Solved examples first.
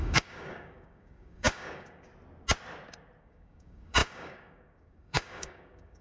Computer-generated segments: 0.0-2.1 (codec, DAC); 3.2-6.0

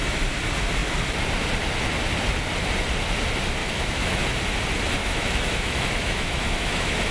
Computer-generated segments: 3.6-4.2 (autoencoder, DAC-VAE); 5.0-7.1

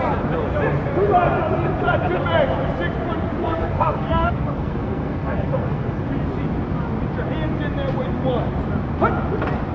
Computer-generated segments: 3.4-6.0 (codec, SNAC)

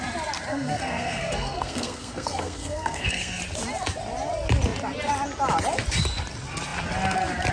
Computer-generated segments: 0.5-3.4 (codec, SNAC)

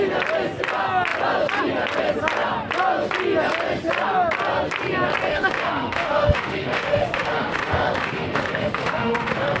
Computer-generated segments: 5.3-9.6 (autoencoder, DAC-VAE)